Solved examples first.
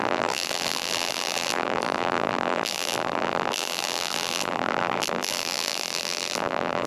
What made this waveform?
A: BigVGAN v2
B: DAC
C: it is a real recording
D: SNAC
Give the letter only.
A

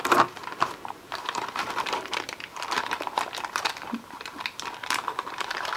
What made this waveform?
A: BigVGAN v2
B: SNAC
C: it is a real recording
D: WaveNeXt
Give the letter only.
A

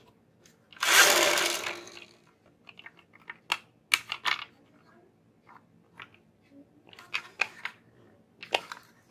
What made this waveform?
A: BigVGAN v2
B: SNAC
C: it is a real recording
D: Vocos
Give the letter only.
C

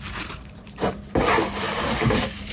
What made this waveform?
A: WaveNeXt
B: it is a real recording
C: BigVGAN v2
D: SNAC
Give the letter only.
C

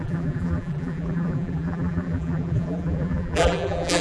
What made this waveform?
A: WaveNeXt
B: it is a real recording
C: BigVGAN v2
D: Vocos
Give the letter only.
C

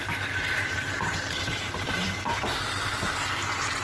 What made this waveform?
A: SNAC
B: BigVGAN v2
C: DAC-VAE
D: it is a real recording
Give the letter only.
B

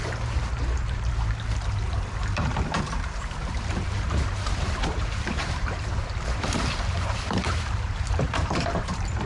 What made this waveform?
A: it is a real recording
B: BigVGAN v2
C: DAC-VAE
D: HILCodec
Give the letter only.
B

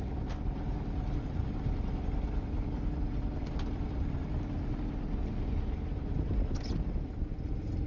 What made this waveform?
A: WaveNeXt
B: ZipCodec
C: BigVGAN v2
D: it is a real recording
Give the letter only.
D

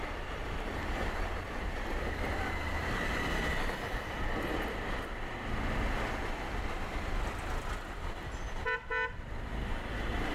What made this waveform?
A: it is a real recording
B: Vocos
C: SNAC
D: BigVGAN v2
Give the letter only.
A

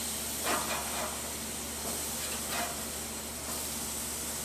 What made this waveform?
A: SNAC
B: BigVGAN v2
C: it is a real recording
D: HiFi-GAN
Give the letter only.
C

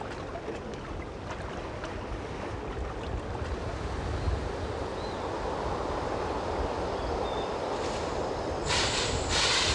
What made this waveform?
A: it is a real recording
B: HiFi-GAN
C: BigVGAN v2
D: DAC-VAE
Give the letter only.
A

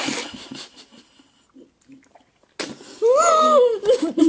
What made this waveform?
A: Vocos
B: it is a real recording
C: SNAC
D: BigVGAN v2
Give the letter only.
B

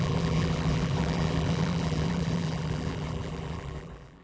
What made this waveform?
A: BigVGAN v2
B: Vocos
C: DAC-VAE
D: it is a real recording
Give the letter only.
A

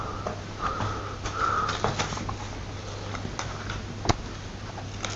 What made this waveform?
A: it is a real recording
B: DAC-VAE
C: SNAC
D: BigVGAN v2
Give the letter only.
A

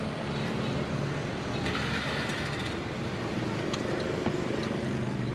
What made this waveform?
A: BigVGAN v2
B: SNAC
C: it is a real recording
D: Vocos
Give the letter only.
C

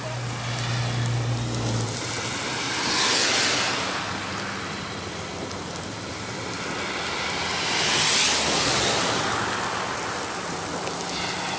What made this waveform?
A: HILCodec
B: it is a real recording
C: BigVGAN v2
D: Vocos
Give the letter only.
B